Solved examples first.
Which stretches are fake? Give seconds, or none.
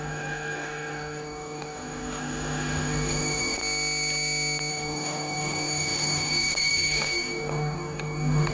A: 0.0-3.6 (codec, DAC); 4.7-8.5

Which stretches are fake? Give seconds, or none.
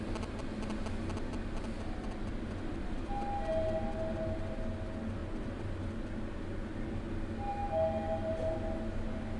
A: none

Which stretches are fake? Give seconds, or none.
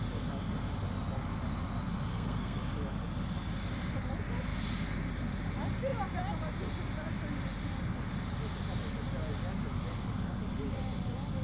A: 2.1-2.6 (codec, SNAC)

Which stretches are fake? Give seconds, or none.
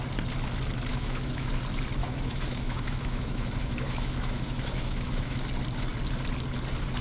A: 0.9-1.5 (autoencoder, DAC-VAE); 2.0-5.4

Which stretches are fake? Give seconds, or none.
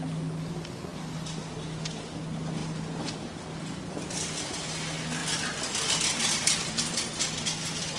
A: none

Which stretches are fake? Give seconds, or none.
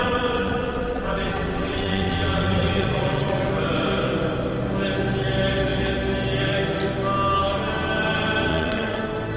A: 0.0-3.5 (vocoder, WaveNeXt); 8.5-9.0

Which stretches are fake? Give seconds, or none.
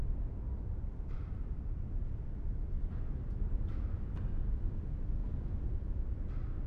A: 0.0-3.7 (vocoder, BigVGAN v2); 5.2-5.9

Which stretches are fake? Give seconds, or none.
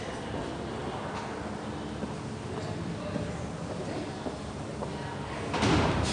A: none